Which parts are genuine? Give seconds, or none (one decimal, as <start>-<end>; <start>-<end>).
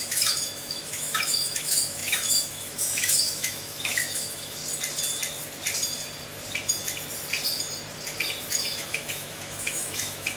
4.6-8.5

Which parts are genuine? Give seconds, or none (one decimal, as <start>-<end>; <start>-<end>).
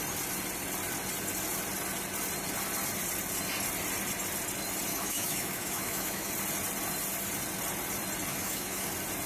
0.0-4.9; 6.3-8.3; 8.9-9.3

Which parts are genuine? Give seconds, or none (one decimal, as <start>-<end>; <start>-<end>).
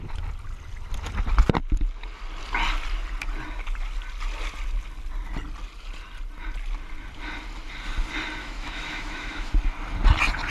0.0-8.4; 9.5-10.5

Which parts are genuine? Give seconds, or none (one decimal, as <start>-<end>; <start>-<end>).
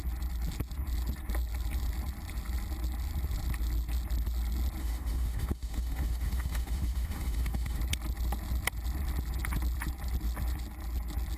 0.0-4.8; 7.8-11.4